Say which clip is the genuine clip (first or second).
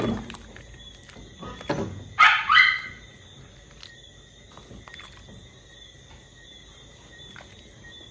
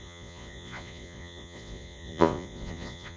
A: first